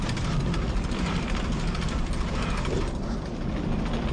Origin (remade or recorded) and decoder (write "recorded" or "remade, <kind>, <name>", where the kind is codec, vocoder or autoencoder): recorded